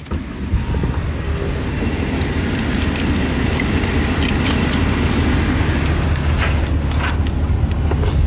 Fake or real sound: real